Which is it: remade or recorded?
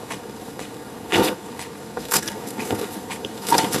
remade